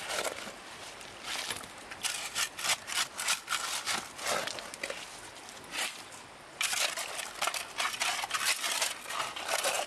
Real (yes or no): yes